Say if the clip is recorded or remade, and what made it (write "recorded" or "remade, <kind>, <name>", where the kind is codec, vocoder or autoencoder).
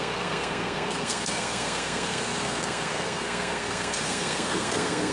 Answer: remade, codec, SNAC